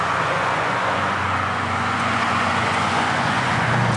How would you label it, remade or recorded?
remade